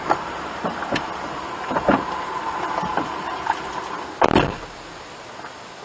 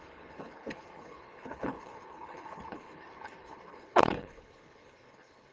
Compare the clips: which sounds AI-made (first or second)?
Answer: second